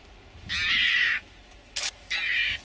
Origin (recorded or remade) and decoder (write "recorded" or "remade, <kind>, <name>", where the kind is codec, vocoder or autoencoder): recorded